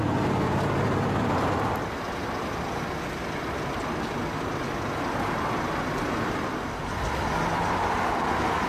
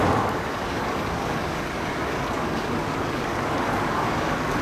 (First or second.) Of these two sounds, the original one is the first